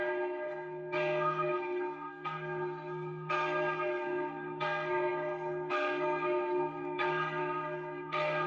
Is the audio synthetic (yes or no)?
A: yes